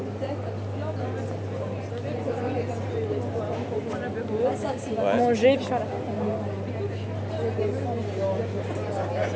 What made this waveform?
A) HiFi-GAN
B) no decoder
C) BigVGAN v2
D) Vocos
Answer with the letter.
B